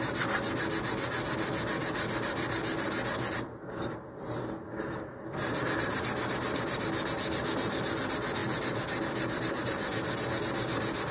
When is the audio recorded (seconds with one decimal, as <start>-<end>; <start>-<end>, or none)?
0.0-11.1